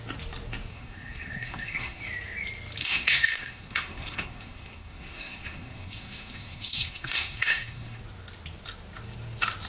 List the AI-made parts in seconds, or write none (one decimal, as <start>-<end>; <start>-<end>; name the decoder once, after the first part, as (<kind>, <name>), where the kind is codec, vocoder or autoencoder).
0.7-2.0 (codec, SNAC); 2.8-8.0